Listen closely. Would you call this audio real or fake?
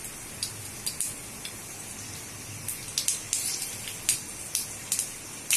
real